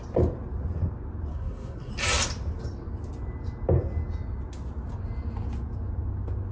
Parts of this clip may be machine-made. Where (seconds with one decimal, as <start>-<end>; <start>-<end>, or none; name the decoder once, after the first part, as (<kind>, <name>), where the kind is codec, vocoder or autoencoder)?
1.3-1.9 (codec, SNAC)